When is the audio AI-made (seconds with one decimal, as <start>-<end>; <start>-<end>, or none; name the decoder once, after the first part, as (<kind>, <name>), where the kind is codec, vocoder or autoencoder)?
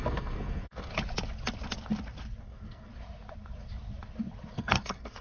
0.0-0.9 (codec, SNAC); 2.4-2.9; 4.5-5.2